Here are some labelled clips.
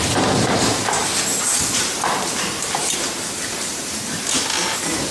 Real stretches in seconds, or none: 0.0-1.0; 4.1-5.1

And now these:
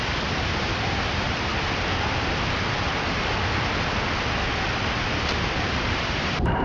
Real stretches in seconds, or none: 1.5-5.5

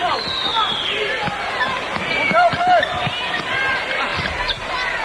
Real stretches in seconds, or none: 0.0-5.0